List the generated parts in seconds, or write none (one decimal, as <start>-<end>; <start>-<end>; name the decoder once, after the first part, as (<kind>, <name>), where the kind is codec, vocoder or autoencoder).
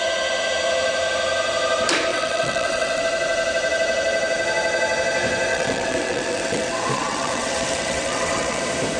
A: 2.1-3.0 (vocoder, WaveNeXt); 5.5-8.6